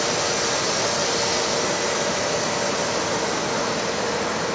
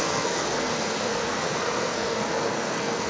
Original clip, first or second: first